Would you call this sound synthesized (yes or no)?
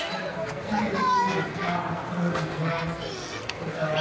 yes